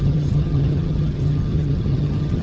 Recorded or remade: remade